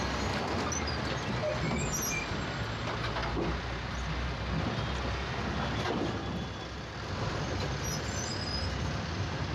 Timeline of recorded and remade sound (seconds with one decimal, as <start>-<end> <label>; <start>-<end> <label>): 0.0-9.5 recorded